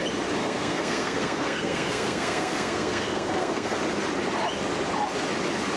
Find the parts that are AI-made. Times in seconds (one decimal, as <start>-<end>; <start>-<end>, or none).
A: 0.4-3.8